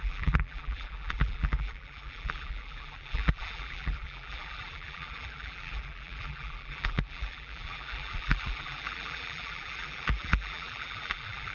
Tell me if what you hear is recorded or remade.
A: remade